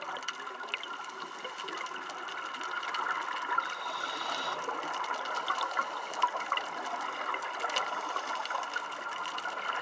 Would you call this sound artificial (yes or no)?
no